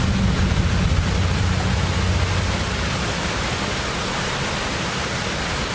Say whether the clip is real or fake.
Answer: real